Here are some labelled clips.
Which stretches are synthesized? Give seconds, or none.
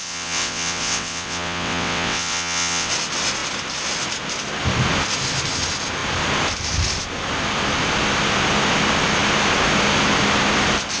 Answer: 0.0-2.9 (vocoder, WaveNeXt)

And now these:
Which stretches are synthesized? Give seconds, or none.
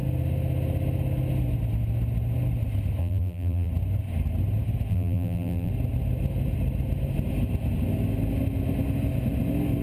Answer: 3.0-3.7 (vocoder, BigVGAN v2); 4.9-5.7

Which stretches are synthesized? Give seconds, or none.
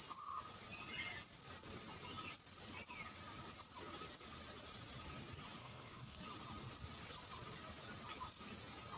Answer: 5.6-6.2 (codec, SNAC)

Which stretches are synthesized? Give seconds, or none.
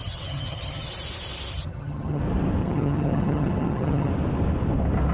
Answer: 0.0-0.9 (vocoder, HiFi-GAN); 1.5-2.2; 2.6-4.1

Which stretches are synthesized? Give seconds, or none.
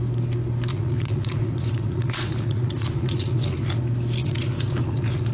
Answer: 0.7-3.8 (vocoder, Vocos); 4.2-5.3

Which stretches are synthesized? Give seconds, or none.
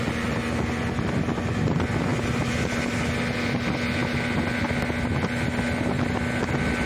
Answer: none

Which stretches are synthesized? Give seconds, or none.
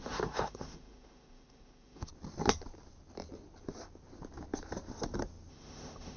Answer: 0.0-2.1 (autoencoder, DAC-VAE); 5.5-6.2